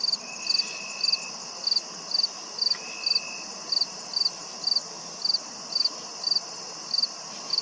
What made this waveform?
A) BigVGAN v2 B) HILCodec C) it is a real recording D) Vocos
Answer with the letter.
C